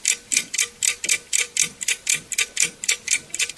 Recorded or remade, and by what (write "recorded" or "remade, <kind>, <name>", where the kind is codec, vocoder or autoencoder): remade, vocoder, BigVGAN v2